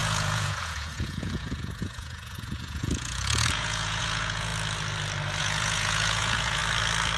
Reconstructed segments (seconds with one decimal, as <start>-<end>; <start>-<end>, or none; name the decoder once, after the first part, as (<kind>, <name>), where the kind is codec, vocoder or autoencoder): 0.0-4.5 (vocoder, Vocos); 5.4-6.6

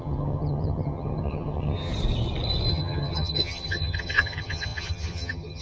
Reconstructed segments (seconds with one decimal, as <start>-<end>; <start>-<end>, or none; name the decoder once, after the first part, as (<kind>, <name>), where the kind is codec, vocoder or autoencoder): 0.0-1.9 (vocoder, HiFi-GAN); 2.7-5.6

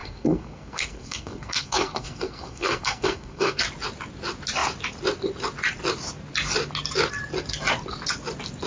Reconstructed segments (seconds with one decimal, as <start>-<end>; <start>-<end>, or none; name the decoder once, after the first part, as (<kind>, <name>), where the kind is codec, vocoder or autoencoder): 0.0-3.6 (codec, SNAC)